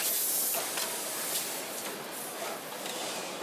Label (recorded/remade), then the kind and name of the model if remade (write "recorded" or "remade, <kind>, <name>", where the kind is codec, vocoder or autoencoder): recorded